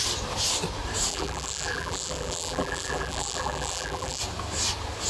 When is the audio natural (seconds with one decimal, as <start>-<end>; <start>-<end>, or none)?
0.0-1.1; 4.2-5.1